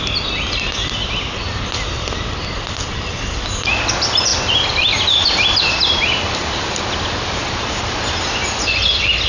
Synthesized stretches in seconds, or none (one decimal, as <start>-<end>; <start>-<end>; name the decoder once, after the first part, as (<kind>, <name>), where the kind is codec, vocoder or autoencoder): none